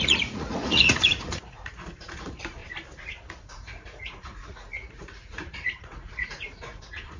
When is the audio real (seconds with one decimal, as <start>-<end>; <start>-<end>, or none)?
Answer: 2.6-3.4